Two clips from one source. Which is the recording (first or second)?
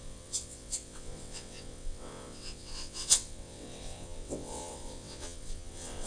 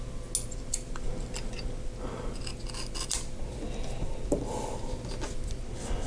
second